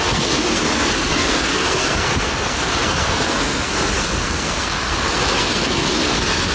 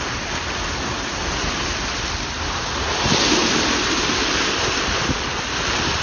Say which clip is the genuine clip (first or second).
second